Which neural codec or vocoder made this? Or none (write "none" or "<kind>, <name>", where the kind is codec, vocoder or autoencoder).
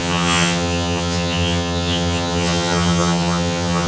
vocoder, HiFi-GAN